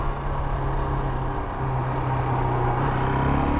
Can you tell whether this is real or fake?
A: real